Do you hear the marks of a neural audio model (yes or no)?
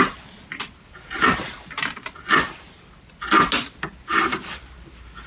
no